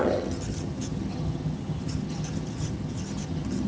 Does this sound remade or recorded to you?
remade